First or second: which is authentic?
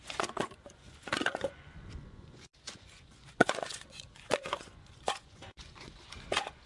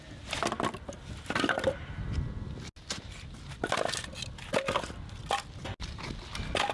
second